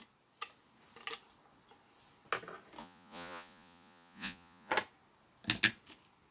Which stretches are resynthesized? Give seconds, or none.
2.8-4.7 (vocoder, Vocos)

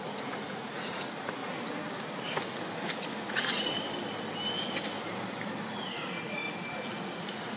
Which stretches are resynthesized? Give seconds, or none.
0.0-1.4 (vocoder, Vocos); 2.9-3.7; 5.7-6.4; 7.0-7.6